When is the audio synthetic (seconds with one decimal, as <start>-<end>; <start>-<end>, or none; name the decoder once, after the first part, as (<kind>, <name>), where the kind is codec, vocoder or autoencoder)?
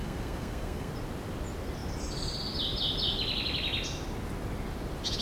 0.0-0.9 (codec, SNAC)